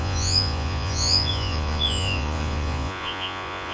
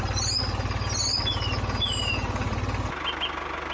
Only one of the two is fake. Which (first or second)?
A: first